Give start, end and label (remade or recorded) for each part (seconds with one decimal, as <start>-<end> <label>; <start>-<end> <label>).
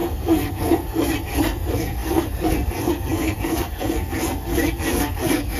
0.0-5.6 remade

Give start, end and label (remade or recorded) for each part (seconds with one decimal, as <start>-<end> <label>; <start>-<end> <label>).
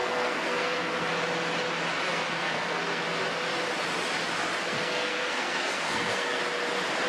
0.0-1.1 remade; 1.1-2.1 recorded; 2.1-3.0 remade; 3.0-4.6 recorded; 4.6-6.4 remade; 6.4-7.1 recorded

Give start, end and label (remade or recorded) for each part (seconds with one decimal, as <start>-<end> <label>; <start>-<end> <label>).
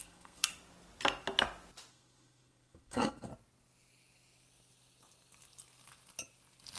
0.0-0.5 remade; 0.5-1.9 recorded; 1.9-3.3 remade; 3.3-6.8 recorded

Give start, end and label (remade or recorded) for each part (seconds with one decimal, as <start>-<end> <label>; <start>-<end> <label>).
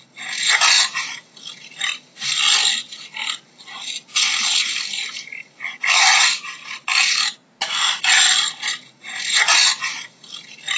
0.0-10.8 recorded